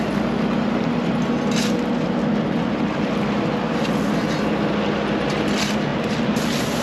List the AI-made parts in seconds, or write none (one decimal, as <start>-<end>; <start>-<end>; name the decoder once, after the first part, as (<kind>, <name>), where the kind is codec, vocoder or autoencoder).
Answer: none